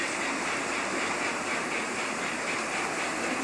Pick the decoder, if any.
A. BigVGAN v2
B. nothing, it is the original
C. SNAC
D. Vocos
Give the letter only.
A